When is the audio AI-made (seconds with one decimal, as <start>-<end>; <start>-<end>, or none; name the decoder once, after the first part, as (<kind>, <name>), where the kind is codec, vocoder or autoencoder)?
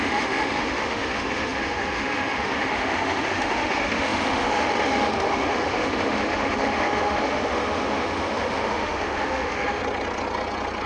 0.0-9.8 (autoencoder, DAC-VAE)